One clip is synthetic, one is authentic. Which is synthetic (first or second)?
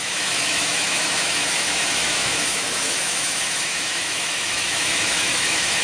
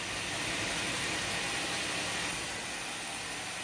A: first